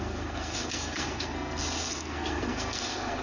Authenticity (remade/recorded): remade